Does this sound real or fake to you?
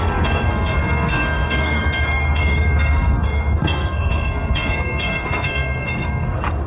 fake